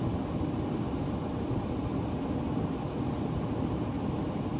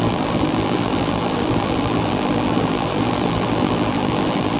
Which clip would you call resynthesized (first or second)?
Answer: second